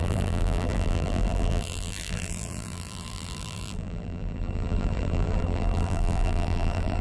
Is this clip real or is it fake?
fake